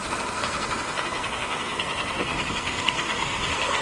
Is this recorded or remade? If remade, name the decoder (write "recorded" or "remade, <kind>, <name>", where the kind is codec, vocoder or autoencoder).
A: remade, codec, SNAC